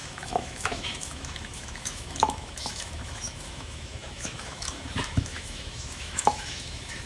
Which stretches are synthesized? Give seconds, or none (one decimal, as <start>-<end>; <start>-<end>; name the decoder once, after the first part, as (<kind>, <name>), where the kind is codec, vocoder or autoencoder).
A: 0.0-7.1 (autoencoder, DAC-VAE)